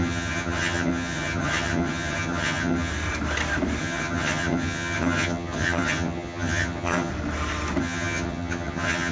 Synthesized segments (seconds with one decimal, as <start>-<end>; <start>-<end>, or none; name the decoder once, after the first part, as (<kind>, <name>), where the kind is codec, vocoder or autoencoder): 0.0-2.9 (vocoder, HiFi-GAN); 3.8-7.1; 7.8-9.1